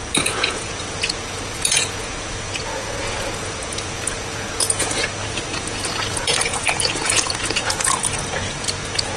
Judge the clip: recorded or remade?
remade